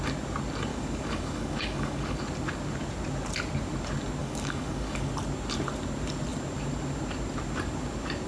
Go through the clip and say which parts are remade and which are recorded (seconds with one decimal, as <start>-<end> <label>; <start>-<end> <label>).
0.0-0.7 recorded; 0.7-2.2 remade; 2.2-4.2 recorded; 4.2-5.1 remade; 5.1-8.3 recorded